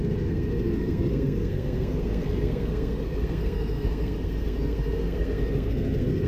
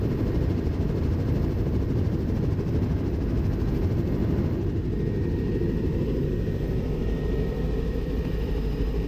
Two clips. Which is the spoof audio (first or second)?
first